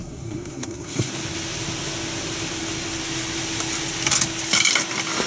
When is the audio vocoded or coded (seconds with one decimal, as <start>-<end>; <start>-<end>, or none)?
0.0-1.1